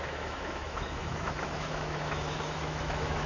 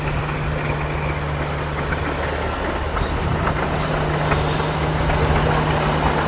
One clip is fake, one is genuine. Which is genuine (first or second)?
second